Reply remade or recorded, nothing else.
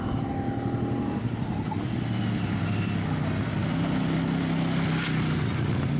recorded